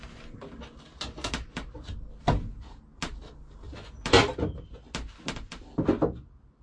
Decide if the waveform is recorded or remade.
recorded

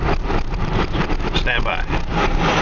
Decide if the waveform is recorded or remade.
remade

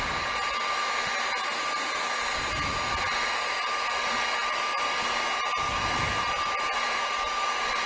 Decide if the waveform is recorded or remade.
recorded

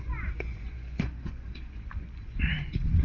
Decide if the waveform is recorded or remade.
remade